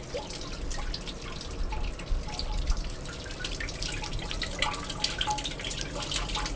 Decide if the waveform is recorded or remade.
recorded